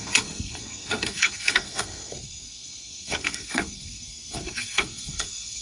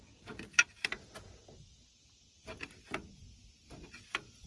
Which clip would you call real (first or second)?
second